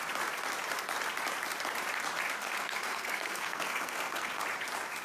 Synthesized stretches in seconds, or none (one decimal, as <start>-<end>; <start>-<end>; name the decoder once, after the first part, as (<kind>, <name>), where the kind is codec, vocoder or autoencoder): 2.4-4.4 (codec, SNAC)